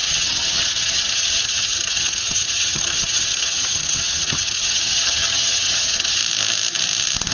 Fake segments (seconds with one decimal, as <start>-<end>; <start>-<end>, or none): 0.0-6.2